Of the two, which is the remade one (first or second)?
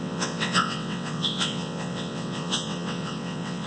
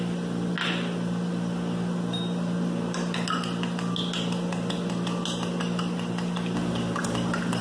first